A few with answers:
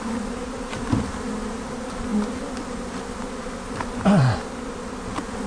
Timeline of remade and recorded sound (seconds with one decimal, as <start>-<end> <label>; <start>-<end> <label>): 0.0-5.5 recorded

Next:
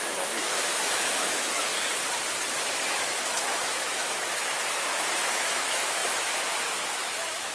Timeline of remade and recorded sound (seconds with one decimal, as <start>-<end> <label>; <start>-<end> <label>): 0.0-1.7 remade; 1.7-2.6 recorded; 2.6-7.5 remade

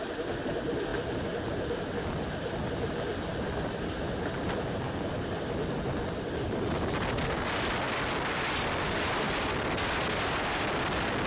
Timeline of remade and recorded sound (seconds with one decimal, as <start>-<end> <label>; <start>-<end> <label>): 0.0-11.3 recorded